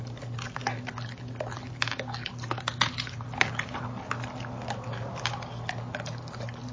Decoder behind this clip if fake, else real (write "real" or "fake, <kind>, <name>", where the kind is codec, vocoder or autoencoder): real